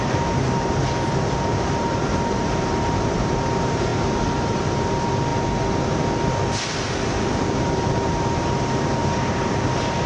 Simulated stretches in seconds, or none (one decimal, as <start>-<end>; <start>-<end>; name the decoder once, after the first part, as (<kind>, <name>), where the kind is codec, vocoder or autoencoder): 0.0-5.3 (vocoder, BigVGAN v2); 7.3-10.1